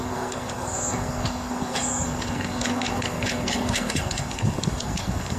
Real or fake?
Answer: fake